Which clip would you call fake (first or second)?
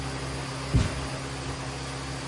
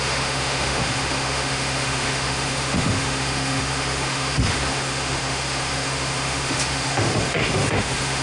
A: second